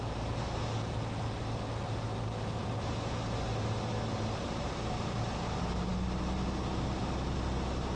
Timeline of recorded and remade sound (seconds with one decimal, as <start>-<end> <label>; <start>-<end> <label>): 0.0-8.0 recorded

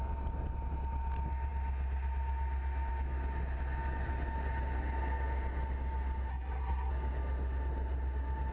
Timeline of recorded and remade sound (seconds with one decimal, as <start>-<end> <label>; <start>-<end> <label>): 0.0-6.3 recorded; 6.3-6.9 remade; 6.9-8.5 recorded